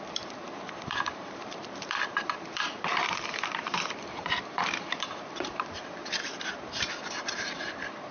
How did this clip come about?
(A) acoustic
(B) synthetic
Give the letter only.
B